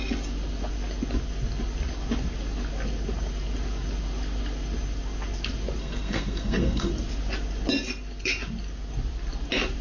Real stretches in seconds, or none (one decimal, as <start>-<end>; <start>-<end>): 0.0-5.8; 6.9-9.8